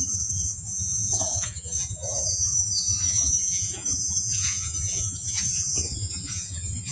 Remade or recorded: remade